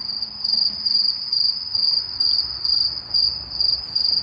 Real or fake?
fake